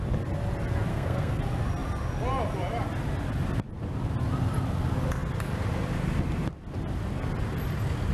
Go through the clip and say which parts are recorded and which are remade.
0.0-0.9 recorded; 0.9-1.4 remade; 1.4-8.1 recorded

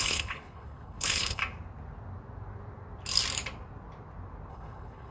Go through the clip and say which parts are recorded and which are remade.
0.0-1.4 remade; 1.4-4.5 recorded; 4.5-5.1 remade

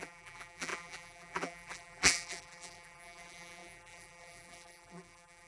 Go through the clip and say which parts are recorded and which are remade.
0.0-5.5 remade

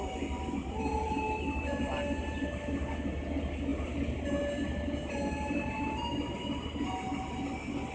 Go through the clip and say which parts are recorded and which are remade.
0.0-7.9 recorded

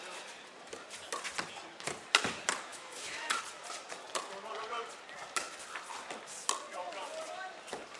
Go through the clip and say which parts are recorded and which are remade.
0.0-2.7 recorded; 2.7-3.4 remade; 3.4-8.0 recorded

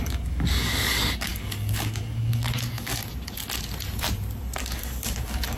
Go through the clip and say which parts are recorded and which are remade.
0.0-3.0 remade; 3.0-4.6 recorded; 4.6-5.6 remade

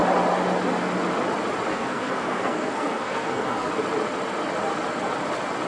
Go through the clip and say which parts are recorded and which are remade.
0.0-1.7 recorded; 1.7-3.7 remade; 3.7-5.7 recorded